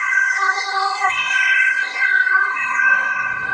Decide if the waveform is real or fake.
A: fake